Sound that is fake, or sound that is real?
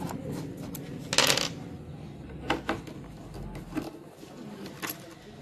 real